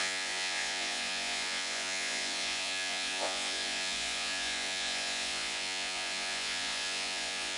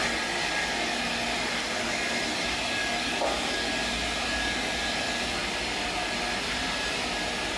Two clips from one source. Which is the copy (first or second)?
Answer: first